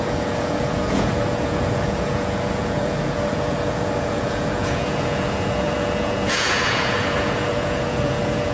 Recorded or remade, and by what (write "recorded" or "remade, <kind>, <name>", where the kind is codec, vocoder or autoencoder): remade, vocoder, Vocos